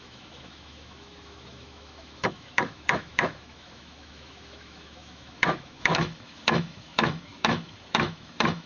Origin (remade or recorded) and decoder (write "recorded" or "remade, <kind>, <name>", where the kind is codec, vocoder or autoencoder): remade, autoencoder, DAC-VAE